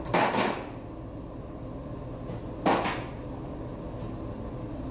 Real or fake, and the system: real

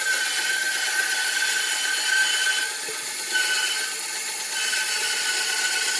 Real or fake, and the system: real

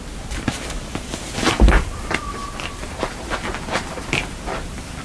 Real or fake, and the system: fake, vocoder, BigVGAN v2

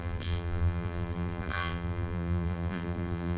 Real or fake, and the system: fake, vocoder, BigVGAN v2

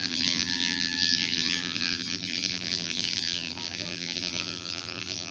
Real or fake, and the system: fake, vocoder, BigVGAN v2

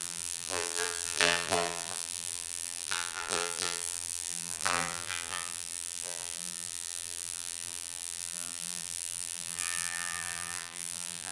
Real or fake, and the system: fake, vocoder, BigVGAN v2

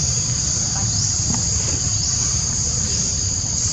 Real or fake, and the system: fake, vocoder, BigVGAN v2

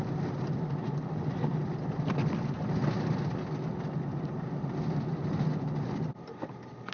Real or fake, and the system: real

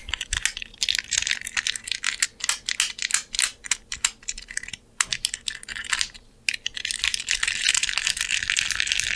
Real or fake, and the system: real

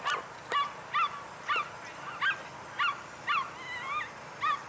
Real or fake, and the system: real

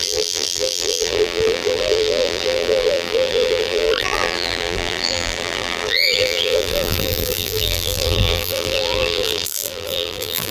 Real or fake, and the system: fake, vocoder, BigVGAN v2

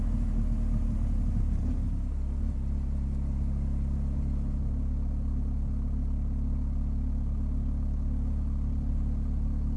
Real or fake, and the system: real